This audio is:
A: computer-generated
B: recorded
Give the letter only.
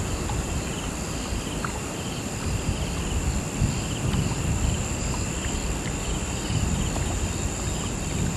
B